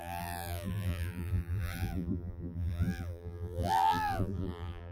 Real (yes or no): no